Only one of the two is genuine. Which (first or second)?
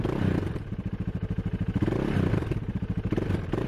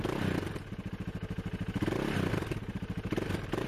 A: second